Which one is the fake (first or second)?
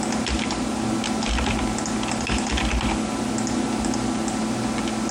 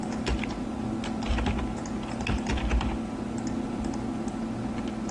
second